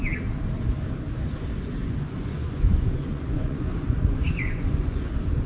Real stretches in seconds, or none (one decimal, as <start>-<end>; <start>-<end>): 0.0-1.8; 5.1-5.5